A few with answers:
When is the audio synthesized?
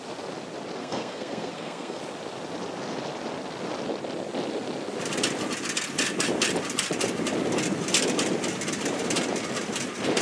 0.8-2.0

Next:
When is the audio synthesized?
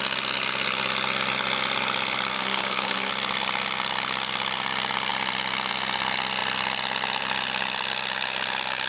2.3-3.1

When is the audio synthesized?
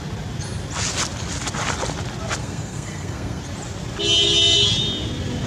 2.4-3.4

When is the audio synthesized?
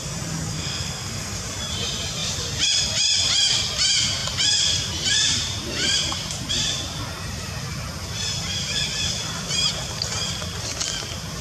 0.5-1.4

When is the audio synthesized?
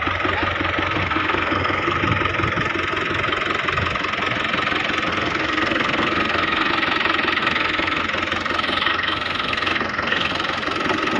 1.0-2.0; 5.1-6.7; 7.4-8.0; 8.9-10.3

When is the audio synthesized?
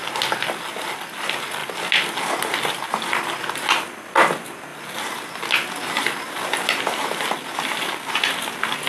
none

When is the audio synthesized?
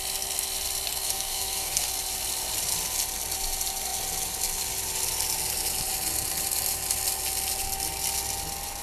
0.9-1.9